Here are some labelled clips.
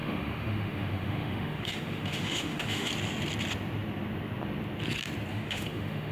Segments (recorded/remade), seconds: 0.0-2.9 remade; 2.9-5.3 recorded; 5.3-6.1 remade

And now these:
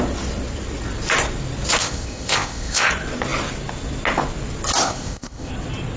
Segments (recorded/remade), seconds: 0.0-1.8 recorded; 1.8-2.9 remade; 2.9-4.8 recorded; 4.8-5.5 remade; 5.5-6.0 recorded

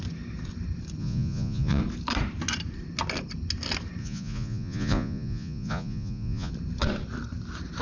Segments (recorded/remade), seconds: 0.0-1.0 recorded; 1.0-1.8 remade; 1.8-4.0 recorded; 4.0-6.5 remade; 6.5-7.8 recorded